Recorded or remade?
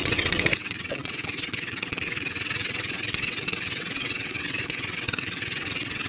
remade